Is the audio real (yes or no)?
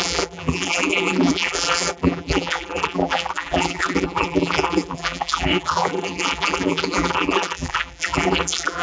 no